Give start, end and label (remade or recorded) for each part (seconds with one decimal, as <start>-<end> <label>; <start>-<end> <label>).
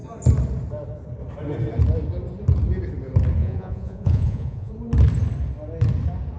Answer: 0.0-3.4 recorded; 3.4-4.7 remade; 4.7-6.4 recorded